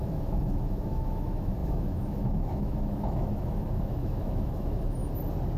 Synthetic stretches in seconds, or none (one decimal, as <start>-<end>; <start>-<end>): 0.0-5.0